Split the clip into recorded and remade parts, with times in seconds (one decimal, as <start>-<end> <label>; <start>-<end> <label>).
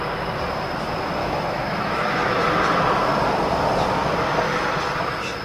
0.0-1.2 recorded; 1.2-2.4 remade; 2.4-5.4 recorded